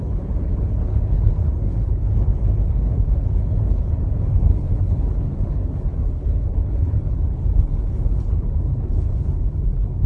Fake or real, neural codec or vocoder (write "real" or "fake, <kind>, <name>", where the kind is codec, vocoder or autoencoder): fake, codec, HILCodec